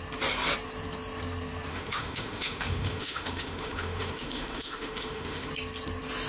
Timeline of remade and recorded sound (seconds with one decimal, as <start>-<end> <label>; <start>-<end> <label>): 0.0-1.7 recorded; 1.7-5.5 remade; 5.5-6.3 recorded